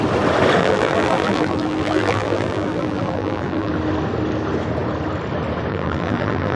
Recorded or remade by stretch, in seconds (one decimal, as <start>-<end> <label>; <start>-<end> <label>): 0.0-0.6 recorded; 0.6-3.7 remade; 3.7-5.7 recorded; 5.7-6.6 remade